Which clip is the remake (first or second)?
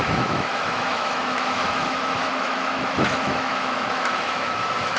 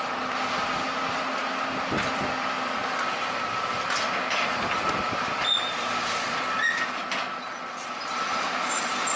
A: first